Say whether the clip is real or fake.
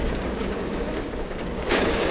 fake